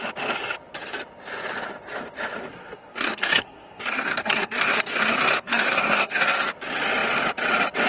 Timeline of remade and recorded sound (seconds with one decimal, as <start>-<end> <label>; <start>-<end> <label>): 0.0-2.5 recorded; 2.5-6.5 remade; 6.5-7.9 recorded